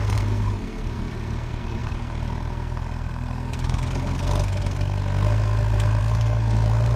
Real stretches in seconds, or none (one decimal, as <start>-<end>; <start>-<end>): none